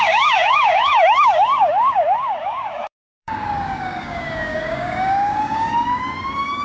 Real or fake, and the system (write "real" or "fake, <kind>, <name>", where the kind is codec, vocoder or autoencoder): fake, codec, DAC